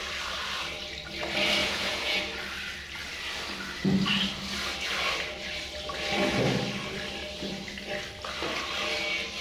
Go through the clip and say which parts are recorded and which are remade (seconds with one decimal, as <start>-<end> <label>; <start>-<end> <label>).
0.0-1.6 recorded; 1.6-2.2 remade; 2.2-9.4 recorded